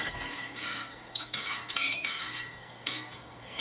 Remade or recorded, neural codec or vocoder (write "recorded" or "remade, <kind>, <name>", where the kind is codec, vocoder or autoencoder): remade, codec, SNAC